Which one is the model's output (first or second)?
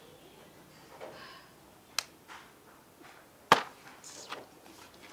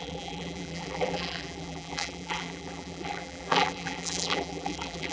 second